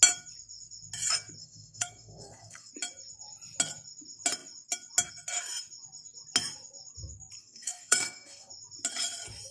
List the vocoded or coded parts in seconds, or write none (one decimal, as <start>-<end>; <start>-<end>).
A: 1.4-2.7; 7.4-8.5